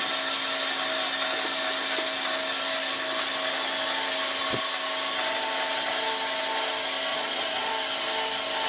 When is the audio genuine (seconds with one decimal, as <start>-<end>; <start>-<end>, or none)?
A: 0.0-7.1; 7.7-8.7